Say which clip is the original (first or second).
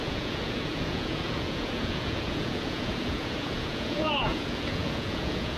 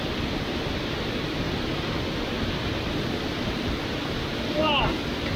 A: second